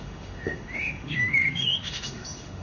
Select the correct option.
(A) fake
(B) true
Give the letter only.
A